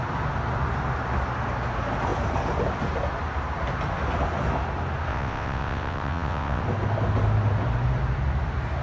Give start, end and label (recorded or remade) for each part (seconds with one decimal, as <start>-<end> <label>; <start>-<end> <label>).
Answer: 0.0-5.1 recorded; 5.1-6.6 remade; 6.6-8.8 recorded